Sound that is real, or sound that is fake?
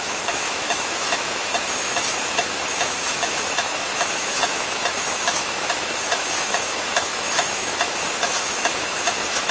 fake